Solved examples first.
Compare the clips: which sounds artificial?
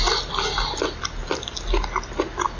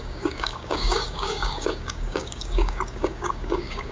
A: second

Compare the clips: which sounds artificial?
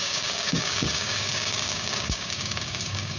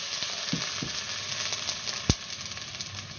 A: first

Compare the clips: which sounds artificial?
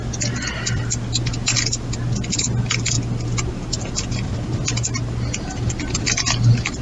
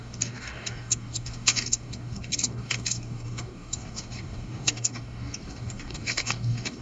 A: second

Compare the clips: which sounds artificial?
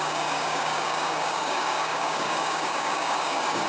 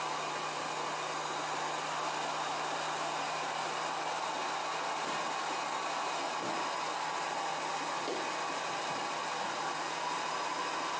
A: first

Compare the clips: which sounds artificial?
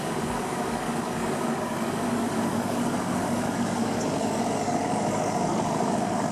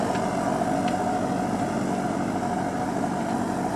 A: first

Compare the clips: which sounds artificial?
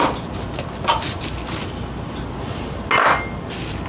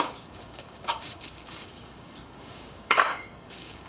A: second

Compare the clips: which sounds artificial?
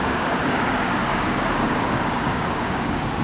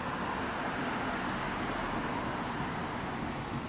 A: first